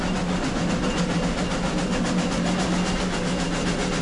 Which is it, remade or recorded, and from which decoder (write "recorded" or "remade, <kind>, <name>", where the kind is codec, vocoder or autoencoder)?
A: recorded